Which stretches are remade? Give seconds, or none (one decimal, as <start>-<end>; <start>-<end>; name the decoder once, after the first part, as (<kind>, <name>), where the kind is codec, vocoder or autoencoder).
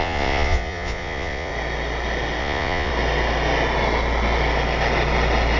0.0-1.5 (vocoder, Vocos); 2.4-2.9